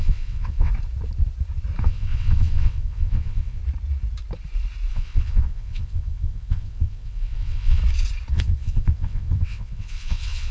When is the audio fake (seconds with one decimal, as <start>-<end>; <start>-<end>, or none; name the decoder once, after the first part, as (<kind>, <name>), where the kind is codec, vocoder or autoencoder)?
0.0-0.7 (vocoder, WaveNeXt); 1.8-3.6; 4.9-7.8; 8.3-10.5